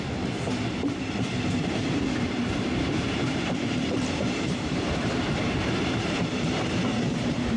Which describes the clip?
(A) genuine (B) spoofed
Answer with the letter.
B